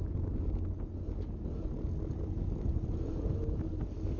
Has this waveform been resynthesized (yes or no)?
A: no